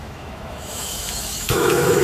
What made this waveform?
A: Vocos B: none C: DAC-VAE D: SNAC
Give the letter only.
C